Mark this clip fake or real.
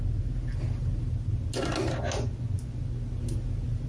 real